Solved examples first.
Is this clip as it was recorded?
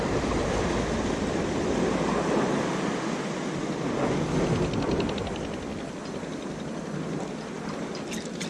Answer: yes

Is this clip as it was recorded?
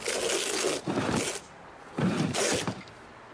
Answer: yes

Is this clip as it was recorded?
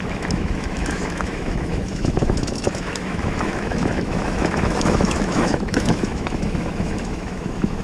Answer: no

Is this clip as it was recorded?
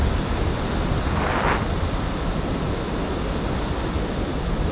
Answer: yes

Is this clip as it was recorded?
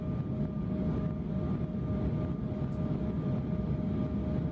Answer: yes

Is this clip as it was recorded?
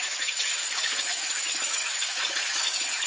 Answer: no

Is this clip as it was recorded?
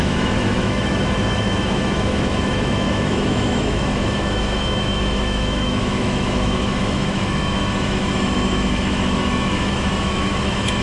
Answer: no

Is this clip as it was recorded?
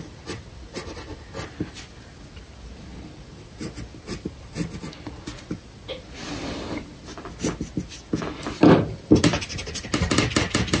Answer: yes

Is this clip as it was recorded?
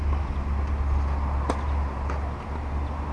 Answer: yes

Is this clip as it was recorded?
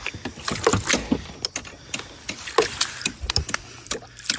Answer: yes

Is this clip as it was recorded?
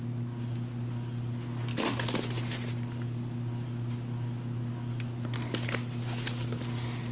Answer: yes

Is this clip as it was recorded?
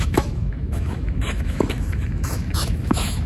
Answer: no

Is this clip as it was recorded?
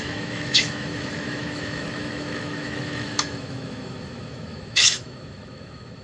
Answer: no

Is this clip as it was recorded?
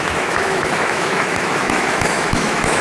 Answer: no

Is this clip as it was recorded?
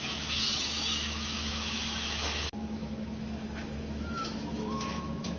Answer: no